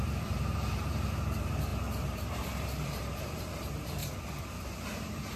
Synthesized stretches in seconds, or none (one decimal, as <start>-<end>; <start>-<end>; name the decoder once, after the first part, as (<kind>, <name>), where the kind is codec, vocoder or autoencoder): 0.0-4.0 (vocoder, BigVGAN v2); 4.8-5.4